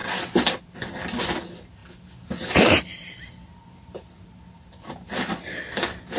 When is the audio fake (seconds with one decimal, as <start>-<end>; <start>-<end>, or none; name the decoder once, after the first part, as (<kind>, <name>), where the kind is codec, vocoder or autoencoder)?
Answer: none